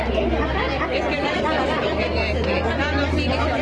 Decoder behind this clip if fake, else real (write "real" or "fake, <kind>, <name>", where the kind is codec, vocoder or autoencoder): real